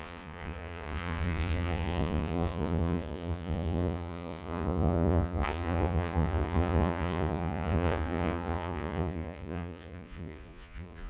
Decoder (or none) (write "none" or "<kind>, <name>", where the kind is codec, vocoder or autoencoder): vocoder, Vocos